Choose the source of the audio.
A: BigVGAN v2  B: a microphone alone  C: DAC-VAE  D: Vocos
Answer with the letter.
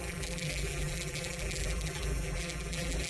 A